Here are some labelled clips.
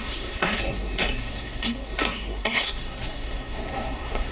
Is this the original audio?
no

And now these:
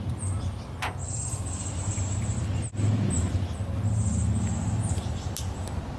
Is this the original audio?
yes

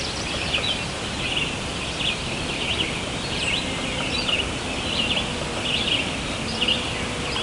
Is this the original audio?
yes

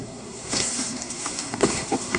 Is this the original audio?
no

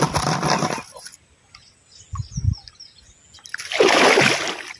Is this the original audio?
yes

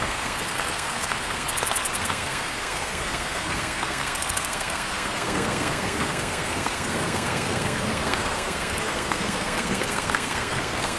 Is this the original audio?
no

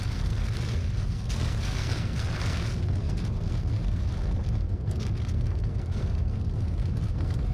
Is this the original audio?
no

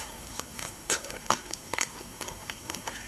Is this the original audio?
no